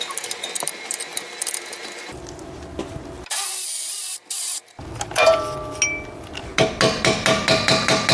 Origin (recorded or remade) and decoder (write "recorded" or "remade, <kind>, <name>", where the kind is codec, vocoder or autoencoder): recorded